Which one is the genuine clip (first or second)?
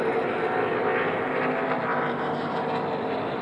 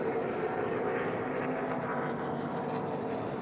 first